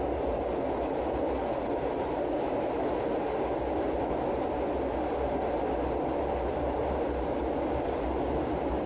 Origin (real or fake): real